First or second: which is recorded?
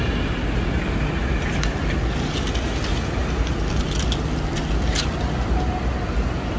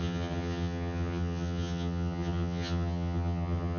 first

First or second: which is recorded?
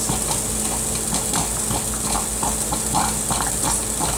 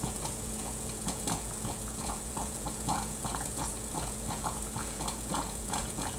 first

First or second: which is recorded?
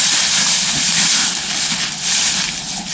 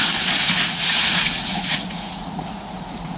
first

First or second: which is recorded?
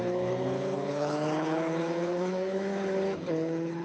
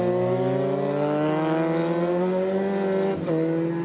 second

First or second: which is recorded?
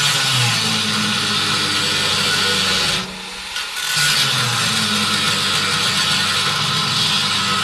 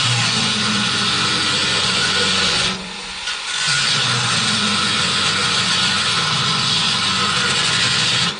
first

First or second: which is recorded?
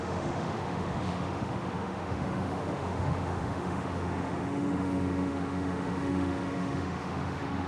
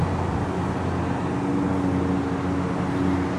second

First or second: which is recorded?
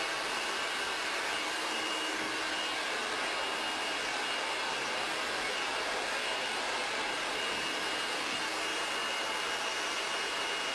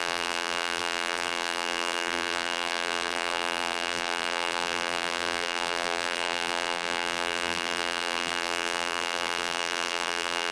first